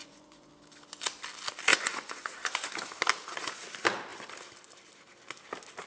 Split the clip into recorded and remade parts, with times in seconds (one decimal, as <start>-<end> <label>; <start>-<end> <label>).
0.0-0.5 remade; 0.5-1.7 recorded; 1.7-2.7 remade; 2.7-5.9 recorded